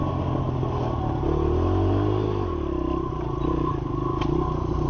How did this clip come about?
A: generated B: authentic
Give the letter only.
B